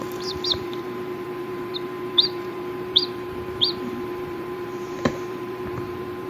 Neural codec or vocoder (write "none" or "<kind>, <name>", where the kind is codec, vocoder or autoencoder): vocoder, BigVGAN v2